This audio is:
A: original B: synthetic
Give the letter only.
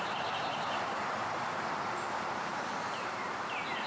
B